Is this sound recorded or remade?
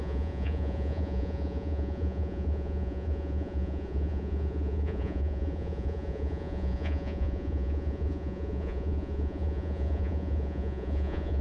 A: remade